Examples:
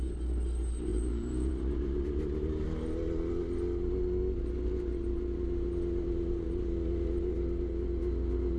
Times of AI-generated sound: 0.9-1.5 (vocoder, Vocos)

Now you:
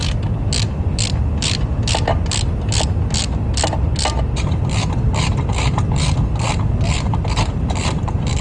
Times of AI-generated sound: none

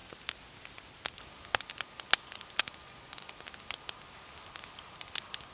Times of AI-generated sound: 2.6-3.3 (vocoder, Vocos)

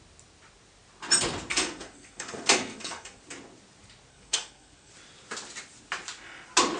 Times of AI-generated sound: 1.5-3.2 (codec, SNAC); 4.1-4.9

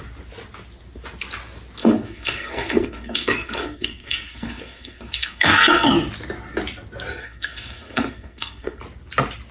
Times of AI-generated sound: 1.8-5.9 (codec, SNAC); 7.2-8.8

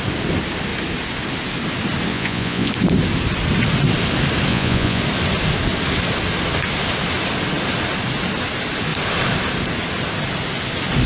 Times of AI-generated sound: 2.1-2.7 (vocoder, Vocos); 4.5-5.0